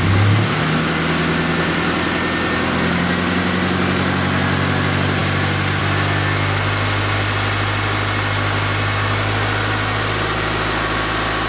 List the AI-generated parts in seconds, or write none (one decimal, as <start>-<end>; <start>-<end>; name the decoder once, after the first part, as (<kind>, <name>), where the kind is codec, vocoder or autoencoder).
none